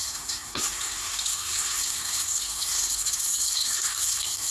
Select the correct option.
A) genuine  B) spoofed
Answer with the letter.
B